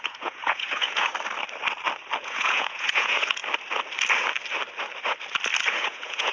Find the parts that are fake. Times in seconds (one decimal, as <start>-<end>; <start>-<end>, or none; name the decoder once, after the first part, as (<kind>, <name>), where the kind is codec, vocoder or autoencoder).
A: 0.0-1.1 (vocoder, Vocos); 2.2-3.4; 5.7-6.3